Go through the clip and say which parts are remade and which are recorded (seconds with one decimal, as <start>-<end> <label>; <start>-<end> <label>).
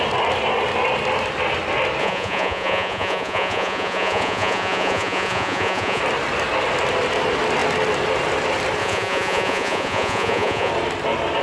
0.0-2.0 recorded; 2.0-6.0 remade; 6.0-8.8 recorded; 8.8-10.7 remade; 10.7-11.4 recorded